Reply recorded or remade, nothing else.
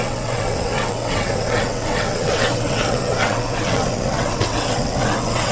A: remade